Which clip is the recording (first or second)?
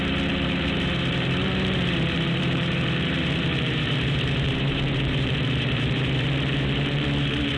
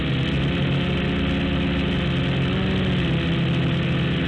second